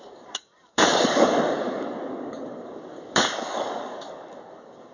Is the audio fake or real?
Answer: fake